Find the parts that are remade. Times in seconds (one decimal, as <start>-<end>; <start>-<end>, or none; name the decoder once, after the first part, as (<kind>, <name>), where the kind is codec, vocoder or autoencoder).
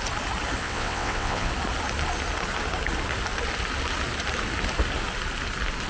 0.6-1.5 (vocoder, WaveNeXt)